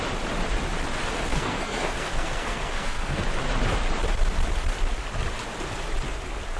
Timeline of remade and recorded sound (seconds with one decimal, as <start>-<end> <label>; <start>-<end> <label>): 0.0-1.3 recorded; 1.3-3.2 remade; 3.2-6.6 recorded